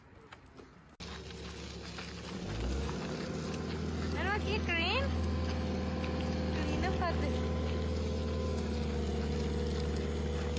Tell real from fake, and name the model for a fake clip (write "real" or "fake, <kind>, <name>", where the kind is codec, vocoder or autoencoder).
real